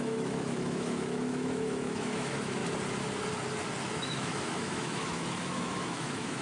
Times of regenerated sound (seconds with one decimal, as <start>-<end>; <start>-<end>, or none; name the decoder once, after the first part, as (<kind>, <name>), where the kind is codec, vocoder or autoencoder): 0.0-2.6 (autoencoder, DAC-VAE); 3.8-6.4